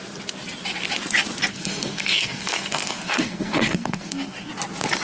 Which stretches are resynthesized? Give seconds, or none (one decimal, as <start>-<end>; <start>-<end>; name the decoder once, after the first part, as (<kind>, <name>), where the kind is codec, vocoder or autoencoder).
1.5-4.5 (codec, SNAC)